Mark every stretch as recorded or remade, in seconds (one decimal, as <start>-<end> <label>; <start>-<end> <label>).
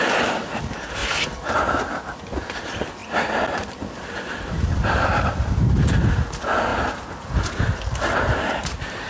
0.0-1.0 recorded; 1.0-1.5 remade; 1.5-3.0 recorded; 3.0-5.5 remade; 5.5-9.1 recorded